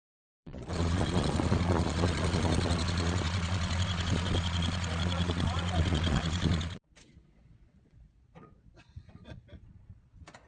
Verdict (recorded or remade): remade